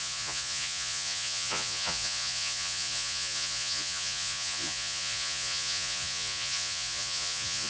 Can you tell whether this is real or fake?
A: fake